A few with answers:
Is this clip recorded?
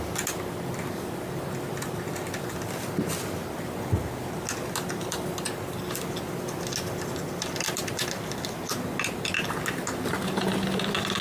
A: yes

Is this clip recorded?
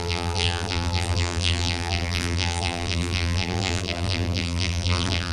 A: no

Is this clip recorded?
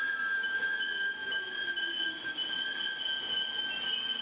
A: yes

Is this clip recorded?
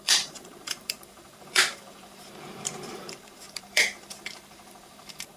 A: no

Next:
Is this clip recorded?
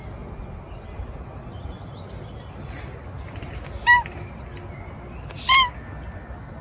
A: yes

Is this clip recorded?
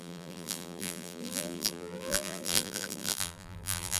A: no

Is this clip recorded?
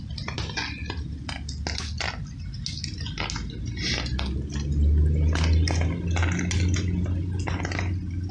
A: yes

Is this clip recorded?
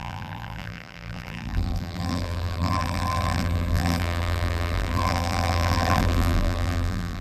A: no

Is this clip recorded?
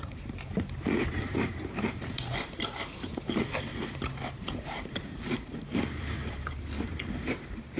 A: no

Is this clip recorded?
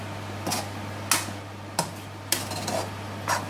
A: yes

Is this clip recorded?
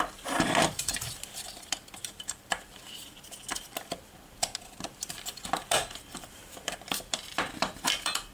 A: no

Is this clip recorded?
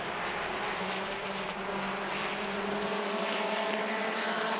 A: no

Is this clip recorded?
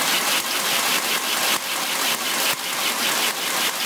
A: no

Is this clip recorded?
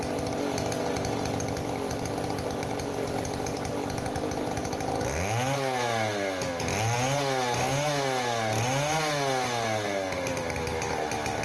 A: yes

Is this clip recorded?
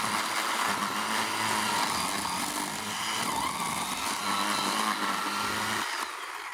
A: yes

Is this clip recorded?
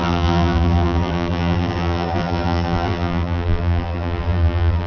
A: no